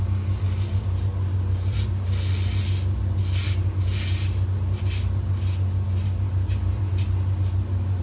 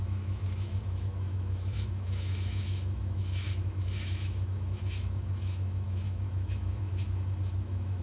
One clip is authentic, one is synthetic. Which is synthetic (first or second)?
second